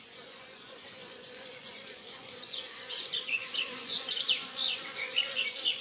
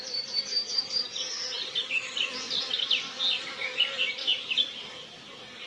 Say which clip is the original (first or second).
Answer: second